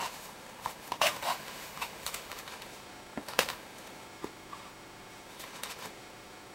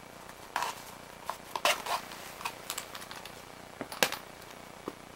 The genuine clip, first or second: second